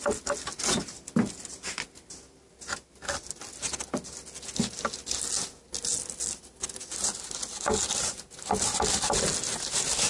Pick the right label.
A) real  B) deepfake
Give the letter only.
A